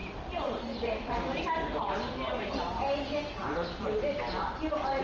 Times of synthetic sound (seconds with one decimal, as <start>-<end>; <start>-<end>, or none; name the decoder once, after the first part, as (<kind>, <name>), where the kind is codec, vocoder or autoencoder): 0.0-3.0 (vocoder, BigVGAN v2); 3.4-5.0